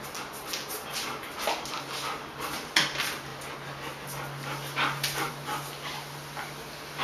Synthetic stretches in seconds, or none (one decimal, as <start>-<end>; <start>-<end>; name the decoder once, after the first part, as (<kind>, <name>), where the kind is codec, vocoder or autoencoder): none